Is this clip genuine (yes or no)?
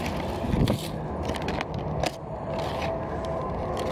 yes